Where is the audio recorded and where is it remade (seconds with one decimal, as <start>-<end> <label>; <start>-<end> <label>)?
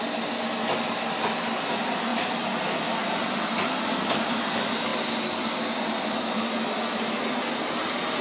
0.0-8.2 recorded